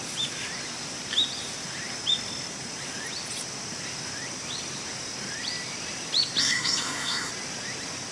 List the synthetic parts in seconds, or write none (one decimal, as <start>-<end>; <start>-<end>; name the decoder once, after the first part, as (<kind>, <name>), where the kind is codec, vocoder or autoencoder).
6.4-7.3 (codec, SNAC)